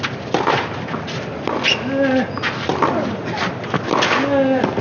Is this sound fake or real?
real